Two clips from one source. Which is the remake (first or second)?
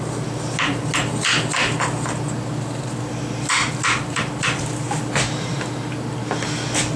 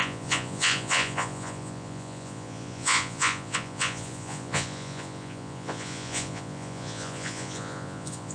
second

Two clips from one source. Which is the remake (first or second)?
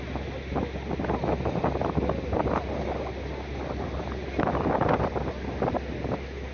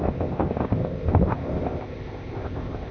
second